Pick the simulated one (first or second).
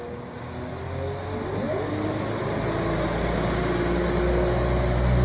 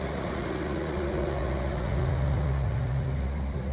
second